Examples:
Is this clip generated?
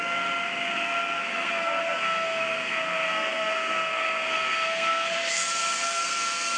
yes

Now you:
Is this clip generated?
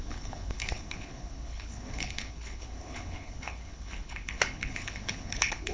yes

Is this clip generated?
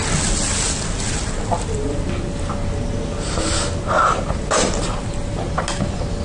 no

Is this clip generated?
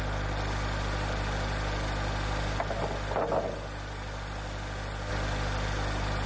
no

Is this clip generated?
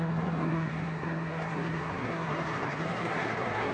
yes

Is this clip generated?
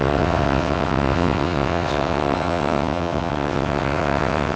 yes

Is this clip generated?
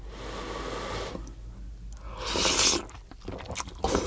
no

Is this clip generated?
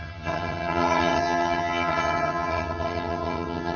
yes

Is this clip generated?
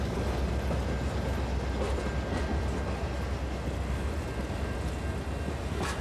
no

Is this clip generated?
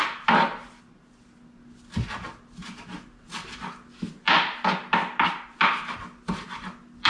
no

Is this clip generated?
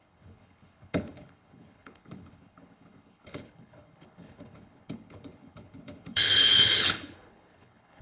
yes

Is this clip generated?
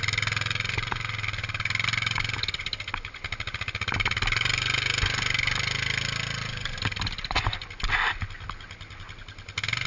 no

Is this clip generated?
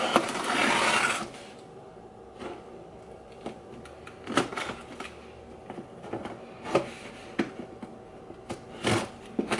no